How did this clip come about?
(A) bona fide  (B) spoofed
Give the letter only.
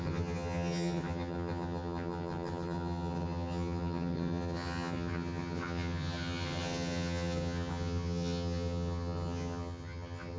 B